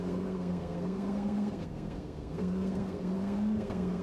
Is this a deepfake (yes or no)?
yes